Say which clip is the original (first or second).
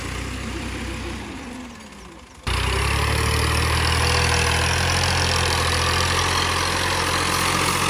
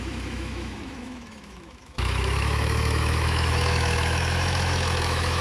first